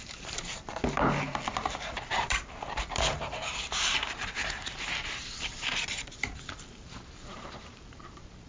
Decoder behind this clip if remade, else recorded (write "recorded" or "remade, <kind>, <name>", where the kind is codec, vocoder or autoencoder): remade, vocoder, BigVGAN v2